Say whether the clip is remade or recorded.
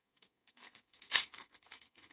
remade